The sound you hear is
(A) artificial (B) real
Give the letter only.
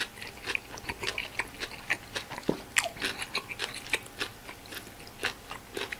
B